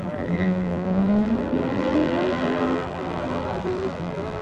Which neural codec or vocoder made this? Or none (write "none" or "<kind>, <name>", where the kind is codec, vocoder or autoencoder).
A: vocoder, BigVGAN v2